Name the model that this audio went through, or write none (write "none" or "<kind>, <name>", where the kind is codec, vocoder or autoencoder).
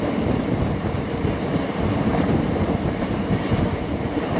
vocoder, BigVGAN v2